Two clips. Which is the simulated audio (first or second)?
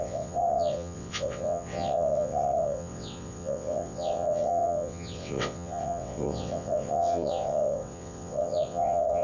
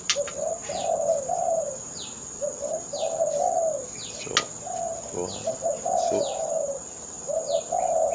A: first